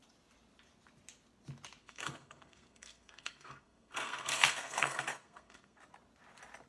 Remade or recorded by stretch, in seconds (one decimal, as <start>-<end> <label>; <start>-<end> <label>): 0.0-1.8 recorded; 1.8-5.8 remade; 5.8-6.7 recorded